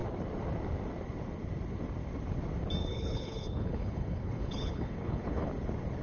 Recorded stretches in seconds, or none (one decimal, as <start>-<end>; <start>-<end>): 0.0-2.8; 5.5-6.0